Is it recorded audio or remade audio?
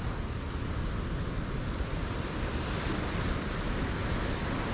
recorded